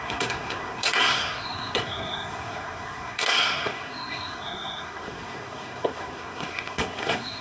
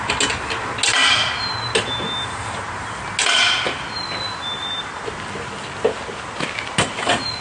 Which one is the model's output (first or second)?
first